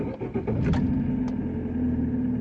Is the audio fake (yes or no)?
no